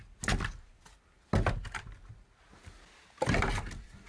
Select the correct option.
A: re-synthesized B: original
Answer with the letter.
B